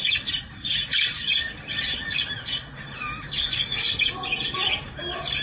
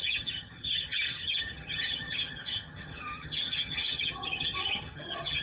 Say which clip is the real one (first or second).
first